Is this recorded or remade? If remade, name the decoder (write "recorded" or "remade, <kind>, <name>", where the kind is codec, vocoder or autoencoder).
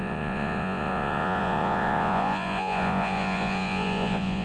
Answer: remade, vocoder, Vocos